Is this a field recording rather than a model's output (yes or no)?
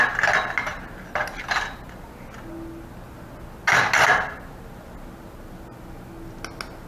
yes